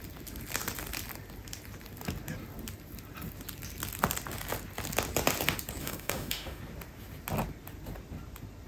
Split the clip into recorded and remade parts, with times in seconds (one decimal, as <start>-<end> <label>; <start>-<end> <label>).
0.0-5.8 recorded; 5.8-6.6 remade; 6.6-8.7 recorded